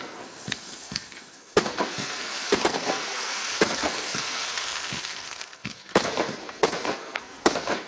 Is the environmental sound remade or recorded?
remade